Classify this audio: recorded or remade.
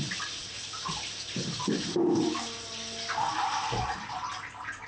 recorded